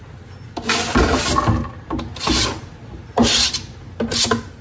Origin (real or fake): real